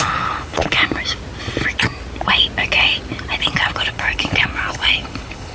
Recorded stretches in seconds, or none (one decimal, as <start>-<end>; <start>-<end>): 0.8-3.4